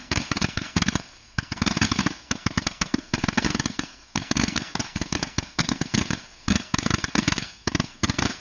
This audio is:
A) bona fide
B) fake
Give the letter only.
B